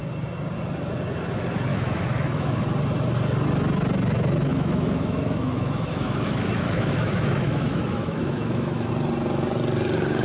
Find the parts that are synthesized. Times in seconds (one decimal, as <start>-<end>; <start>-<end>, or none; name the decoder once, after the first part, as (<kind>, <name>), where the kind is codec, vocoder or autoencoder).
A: 1.7-2.6 (autoencoder, DAC-VAE); 4.5-8.9